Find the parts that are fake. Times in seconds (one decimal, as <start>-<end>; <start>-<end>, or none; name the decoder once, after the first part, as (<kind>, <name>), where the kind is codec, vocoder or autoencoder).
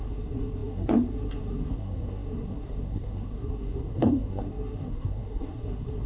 0.0-6.1 (codec, SNAC)